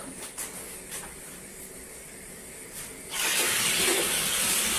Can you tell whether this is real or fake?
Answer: fake